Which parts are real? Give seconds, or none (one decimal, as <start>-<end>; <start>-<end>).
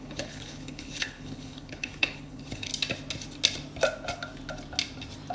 2.7-5.3